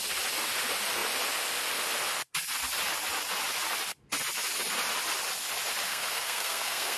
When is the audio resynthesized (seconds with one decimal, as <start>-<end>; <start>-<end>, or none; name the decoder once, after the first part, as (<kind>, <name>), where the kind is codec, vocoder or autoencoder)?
5.9-7.0 (codec, SNAC)